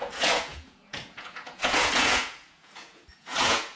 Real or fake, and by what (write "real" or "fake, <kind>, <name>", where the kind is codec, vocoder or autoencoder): fake, vocoder, Vocos